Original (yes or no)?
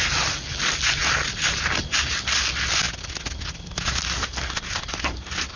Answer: yes